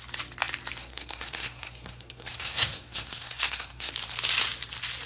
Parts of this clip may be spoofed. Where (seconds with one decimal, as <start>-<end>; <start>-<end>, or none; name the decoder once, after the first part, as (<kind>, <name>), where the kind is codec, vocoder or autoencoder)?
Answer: 0.8-3.9 (codec, SNAC)